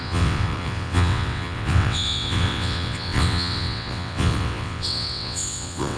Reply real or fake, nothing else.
fake